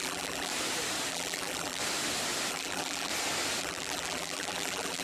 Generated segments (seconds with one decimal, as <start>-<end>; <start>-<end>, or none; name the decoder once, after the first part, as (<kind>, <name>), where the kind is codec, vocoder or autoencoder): 0.0-0.5 (vocoder, BigVGAN v2); 1.1-1.8; 2.5-3.1; 3.6-5.0